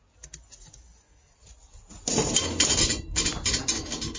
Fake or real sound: real